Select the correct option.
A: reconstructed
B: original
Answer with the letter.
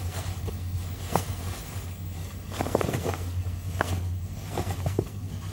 A